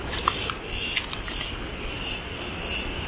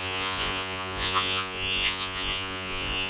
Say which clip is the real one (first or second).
first